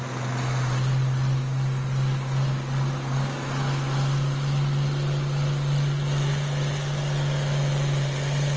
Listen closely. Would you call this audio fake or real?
real